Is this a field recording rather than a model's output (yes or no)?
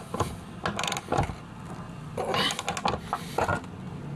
yes